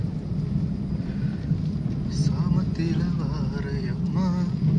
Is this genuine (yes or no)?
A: yes